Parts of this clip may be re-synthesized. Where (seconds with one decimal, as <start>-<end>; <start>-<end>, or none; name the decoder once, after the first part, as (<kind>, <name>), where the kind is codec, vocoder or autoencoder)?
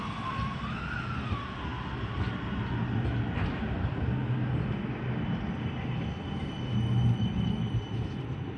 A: none